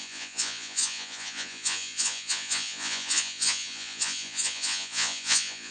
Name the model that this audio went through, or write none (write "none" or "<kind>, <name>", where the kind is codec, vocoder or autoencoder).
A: vocoder, Vocos